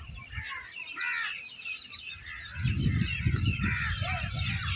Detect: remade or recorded recorded